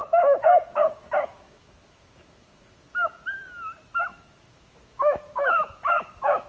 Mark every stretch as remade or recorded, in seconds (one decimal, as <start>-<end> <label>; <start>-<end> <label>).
0.0-2.8 remade; 2.8-4.1 recorded; 4.1-6.5 remade